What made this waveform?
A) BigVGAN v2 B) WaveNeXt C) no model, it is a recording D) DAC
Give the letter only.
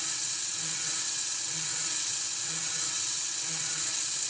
B